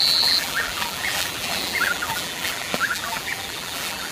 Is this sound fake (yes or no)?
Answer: yes